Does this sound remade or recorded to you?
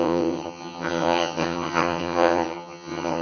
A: remade